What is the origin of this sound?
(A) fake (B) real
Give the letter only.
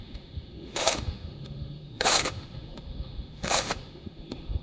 A